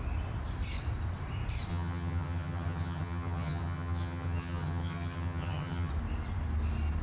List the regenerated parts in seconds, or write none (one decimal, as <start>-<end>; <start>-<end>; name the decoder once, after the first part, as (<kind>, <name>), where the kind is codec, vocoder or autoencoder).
1.7-5.9 (vocoder, HiFi-GAN)

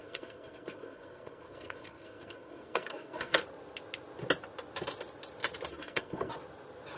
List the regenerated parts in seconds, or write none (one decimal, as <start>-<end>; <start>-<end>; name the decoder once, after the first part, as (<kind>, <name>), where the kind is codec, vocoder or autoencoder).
0.0-3.4 (codec, SNAC); 5.7-6.3

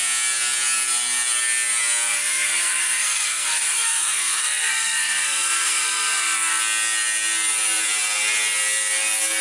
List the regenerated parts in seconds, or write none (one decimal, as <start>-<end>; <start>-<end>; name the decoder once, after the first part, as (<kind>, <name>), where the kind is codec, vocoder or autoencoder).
2.1-6.6 (codec, SNAC)

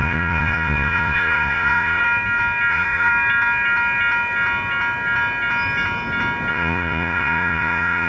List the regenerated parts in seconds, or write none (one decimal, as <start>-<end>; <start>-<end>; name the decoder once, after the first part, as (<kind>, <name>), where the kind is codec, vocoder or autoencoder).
0.0-2.0 (vocoder, Vocos); 2.7-3.1; 6.5-8.1

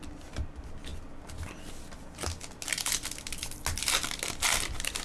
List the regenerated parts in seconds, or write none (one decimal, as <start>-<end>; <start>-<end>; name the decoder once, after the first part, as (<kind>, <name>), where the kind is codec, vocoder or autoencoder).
none